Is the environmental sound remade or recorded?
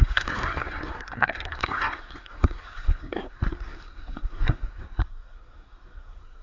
remade